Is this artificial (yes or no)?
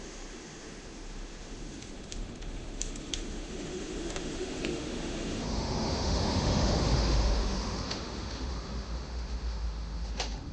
yes